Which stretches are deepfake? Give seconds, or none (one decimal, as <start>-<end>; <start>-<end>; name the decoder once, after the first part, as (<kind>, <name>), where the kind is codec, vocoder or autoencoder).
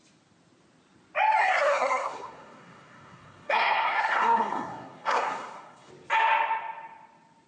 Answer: 1.4-5.9 (codec, SNAC)